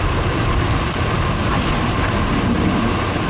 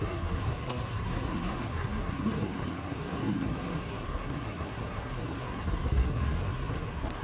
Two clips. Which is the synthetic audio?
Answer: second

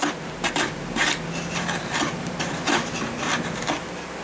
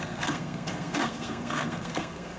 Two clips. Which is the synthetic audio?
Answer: second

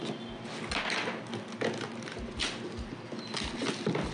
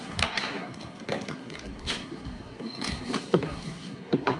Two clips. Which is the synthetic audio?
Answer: second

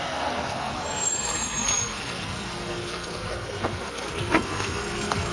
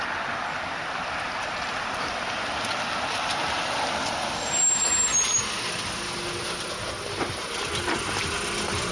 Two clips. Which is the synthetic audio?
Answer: first